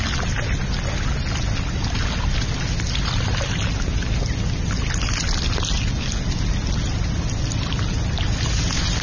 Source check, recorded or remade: recorded